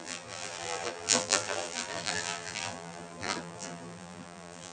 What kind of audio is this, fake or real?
fake